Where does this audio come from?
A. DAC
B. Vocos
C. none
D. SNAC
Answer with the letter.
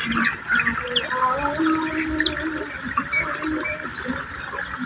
C